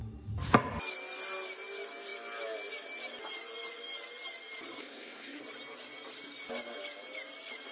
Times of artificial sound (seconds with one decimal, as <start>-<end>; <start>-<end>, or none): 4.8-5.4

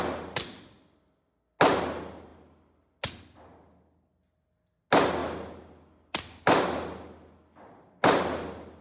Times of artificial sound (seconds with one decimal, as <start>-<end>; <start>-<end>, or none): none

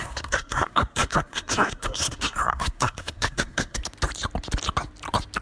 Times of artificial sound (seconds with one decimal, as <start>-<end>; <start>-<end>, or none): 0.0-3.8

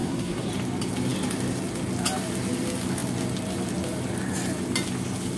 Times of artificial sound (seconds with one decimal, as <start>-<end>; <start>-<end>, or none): 0.0-0.5

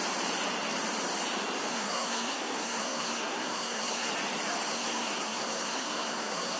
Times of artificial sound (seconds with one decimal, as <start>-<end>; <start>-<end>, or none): 1.7-4.1; 4.7-6.6

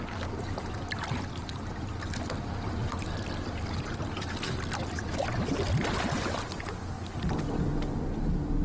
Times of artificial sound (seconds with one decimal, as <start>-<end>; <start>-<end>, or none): none

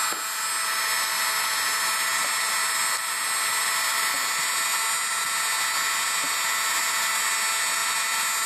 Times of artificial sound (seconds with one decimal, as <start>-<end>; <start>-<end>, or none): none

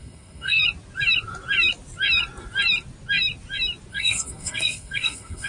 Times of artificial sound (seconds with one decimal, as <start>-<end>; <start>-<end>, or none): 0.0-0.6; 3.9-5.5